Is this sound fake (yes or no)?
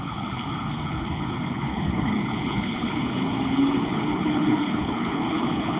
yes